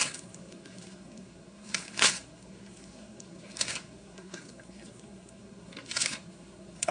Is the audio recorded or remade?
remade